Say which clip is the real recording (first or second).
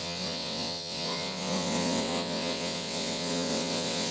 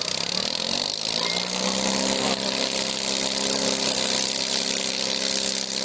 second